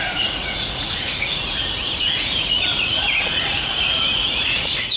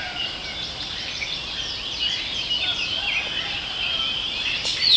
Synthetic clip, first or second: first